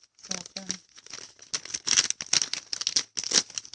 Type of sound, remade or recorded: recorded